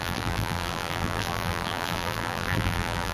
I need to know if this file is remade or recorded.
remade